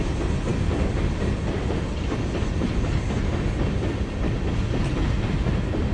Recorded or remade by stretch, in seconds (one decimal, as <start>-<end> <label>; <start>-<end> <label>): 0.0-5.9 recorded